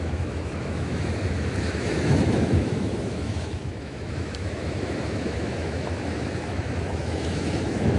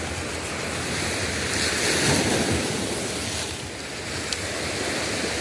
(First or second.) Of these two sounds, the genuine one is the second